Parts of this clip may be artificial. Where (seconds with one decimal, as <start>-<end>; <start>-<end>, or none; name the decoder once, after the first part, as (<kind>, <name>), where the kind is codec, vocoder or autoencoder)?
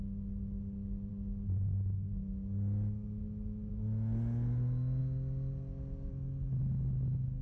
none